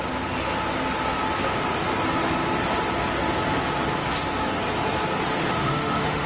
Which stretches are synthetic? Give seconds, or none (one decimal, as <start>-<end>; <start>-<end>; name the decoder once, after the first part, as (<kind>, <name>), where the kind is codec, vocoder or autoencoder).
5.6-6.3 (autoencoder, DAC-VAE)